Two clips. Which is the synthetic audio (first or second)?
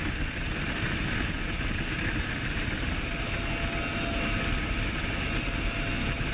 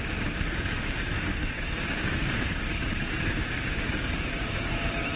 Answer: second